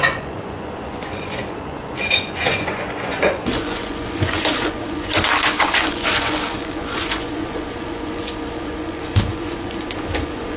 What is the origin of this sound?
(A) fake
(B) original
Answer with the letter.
A